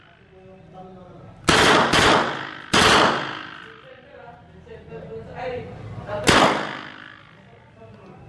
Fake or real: real